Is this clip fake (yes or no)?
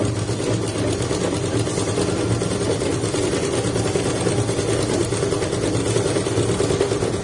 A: no